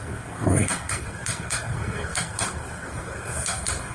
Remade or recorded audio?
remade